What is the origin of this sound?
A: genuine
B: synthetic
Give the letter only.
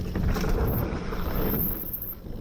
A